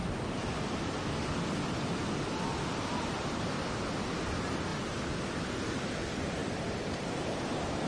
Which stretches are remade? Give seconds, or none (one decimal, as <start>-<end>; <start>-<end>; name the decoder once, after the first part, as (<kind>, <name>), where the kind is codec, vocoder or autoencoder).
4.3-7.9 (vocoder, BigVGAN v2)